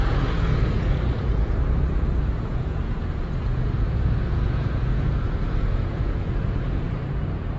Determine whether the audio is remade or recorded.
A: remade